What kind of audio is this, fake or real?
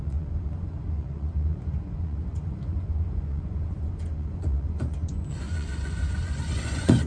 fake